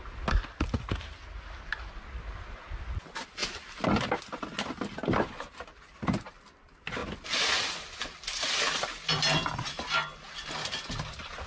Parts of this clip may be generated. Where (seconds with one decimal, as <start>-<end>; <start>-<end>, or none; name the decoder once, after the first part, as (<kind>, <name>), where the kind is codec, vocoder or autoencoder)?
none

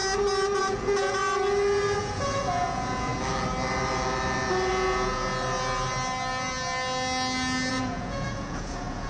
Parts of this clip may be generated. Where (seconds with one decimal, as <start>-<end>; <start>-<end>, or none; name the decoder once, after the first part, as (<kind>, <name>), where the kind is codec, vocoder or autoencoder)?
0.6-1.2 (vocoder, Vocos); 2.0-3.1; 4.7-5.3; 7.7-9.1

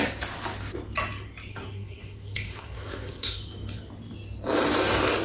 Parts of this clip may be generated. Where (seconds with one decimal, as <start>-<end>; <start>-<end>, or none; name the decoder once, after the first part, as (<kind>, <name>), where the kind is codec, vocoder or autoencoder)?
1.5-3.4 (codec, SNAC)

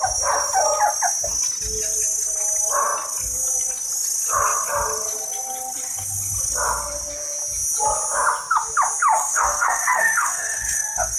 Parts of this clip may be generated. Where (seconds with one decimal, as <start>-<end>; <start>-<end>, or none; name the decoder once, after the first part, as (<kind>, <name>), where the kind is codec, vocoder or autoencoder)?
9.2-11.2 (codec, SNAC)

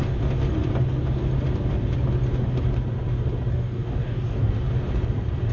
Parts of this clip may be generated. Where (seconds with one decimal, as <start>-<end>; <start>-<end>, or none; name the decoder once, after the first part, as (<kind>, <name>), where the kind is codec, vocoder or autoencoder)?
3.5-4.5 (codec, DAC)